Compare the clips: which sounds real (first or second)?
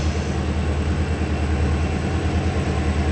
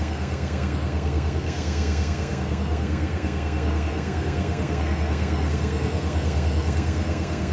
first